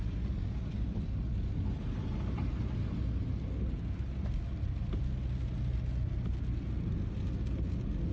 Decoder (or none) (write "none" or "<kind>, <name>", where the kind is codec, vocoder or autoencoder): none